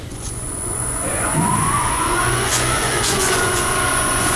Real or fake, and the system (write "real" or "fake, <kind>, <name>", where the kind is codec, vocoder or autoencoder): fake, vocoder, Vocos